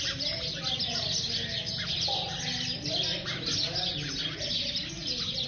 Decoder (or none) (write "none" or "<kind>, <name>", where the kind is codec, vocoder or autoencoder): none